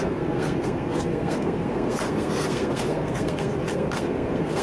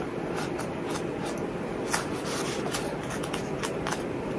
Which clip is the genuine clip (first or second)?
second